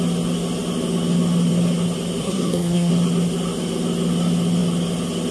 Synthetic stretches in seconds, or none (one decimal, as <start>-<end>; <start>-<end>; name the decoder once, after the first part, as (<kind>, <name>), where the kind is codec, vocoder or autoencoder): 2.2-2.9 (codec, SNAC)